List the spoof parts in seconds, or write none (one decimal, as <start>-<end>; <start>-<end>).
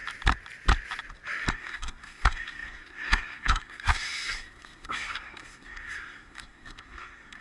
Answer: 1.5-7.4